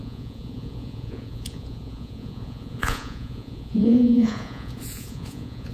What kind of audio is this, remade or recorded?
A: remade